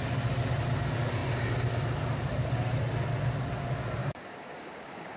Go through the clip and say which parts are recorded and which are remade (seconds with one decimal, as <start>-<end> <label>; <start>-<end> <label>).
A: 0.0-4.0 recorded; 4.0-5.2 remade